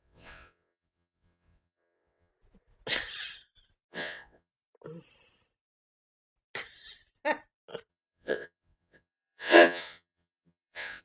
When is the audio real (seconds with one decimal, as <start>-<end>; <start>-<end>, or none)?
2.3-3.9; 4.5-7.9